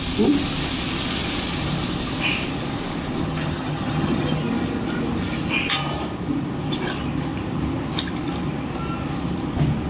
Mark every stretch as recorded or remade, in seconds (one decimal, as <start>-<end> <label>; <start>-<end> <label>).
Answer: 0.0-3.2 recorded; 3.2-4.4 remade; 4.4-9.9 recorded